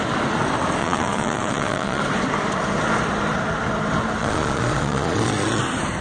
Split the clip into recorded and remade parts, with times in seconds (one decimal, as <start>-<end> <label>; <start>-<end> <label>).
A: 0.0-0.8 recorded; 0.8-2.0 remade; 2.0-4.2 recorded; 4.2-5.6 remade; 5.6-6.0 recorded